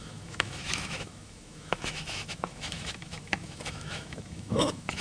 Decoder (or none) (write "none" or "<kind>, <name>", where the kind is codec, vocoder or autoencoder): autoencoder, DAC-VAE